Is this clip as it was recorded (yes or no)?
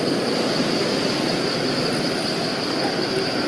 yes